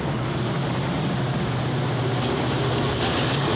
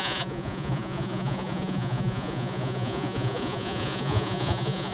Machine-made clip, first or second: second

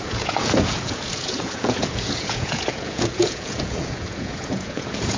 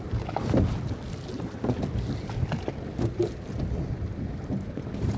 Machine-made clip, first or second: first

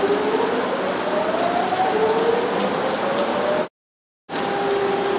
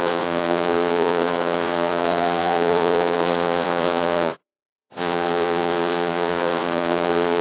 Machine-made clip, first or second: second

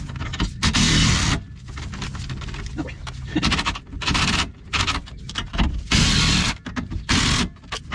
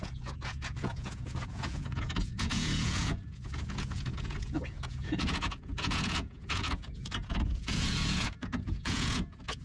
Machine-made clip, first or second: second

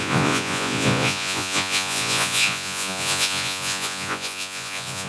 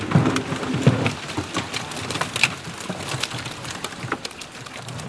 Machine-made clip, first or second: first